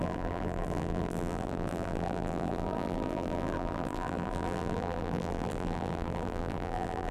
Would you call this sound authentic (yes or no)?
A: no